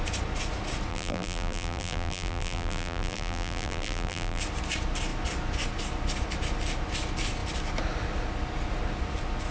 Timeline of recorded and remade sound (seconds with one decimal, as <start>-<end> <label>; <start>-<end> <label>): 0.0-0.9 recorded; 0.9-4.4 remade; 4.4-9.5 recorded